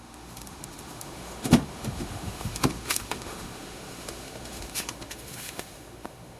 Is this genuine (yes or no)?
no